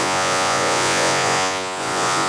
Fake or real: fake